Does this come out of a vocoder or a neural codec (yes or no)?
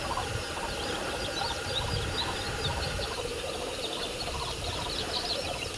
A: yes